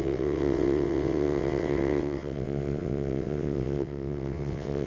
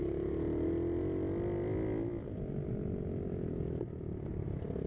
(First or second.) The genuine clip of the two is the second